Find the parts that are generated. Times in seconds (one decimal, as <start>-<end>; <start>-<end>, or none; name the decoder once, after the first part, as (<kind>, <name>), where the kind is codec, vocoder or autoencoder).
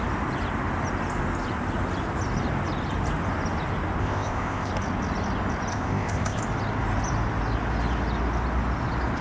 4.0-4.7 (codec, ZipCodec); 5.7-6.4